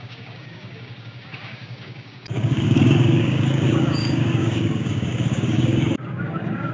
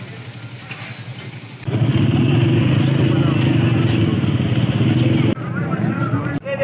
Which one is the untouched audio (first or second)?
second